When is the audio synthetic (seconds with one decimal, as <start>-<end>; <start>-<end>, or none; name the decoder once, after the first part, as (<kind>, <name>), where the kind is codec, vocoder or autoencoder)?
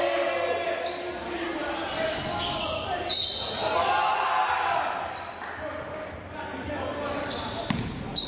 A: none